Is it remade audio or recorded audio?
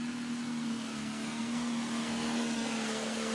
remade